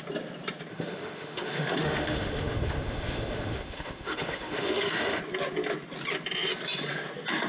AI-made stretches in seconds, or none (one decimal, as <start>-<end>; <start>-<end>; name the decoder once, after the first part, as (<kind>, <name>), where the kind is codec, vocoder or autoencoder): 0.7-5.2 (autoencoder, DAC-VAE)